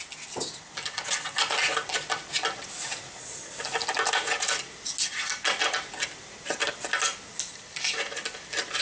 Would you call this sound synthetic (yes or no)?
no